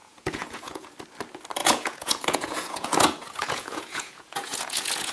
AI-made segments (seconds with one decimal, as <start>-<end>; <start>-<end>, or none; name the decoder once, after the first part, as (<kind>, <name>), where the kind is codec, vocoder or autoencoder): 0.0-0.9 (vocoder, Vocos); 1.6-5.1